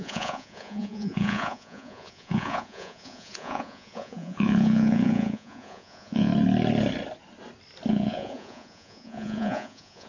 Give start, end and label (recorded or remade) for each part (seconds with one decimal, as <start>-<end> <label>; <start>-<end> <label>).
0.0-6.3 remade; 6.3-7.9 recorded; 7.9-10.1 remade